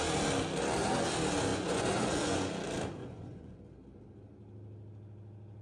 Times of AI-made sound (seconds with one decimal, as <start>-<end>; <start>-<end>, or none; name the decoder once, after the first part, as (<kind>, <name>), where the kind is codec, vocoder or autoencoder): 1.5-2.5 (vocoder, Vocos); 3.0-3.6